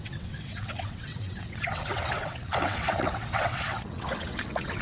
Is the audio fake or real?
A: fake